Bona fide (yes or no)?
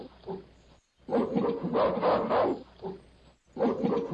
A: yes